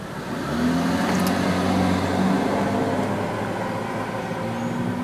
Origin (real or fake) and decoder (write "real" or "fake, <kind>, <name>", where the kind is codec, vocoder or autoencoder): real